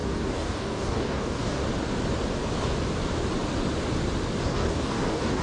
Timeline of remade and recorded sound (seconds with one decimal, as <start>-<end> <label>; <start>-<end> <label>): 0.0-1.6 remade; 1.6-4.4 recorded; 4.4-5.4 remade